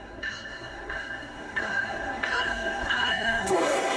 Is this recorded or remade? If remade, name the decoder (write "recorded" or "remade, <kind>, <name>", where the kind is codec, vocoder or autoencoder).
remade, codec, SNAC